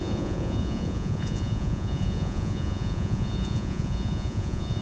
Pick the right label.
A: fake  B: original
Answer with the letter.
A